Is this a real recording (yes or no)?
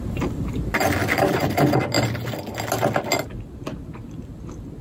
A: yes